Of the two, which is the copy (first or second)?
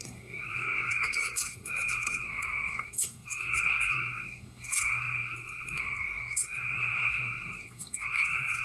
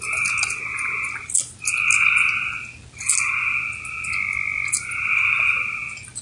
first